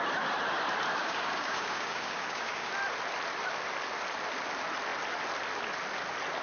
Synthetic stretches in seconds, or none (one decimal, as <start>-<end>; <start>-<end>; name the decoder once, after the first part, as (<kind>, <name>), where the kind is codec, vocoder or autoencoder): 1.0-2.7 (codec, DAC)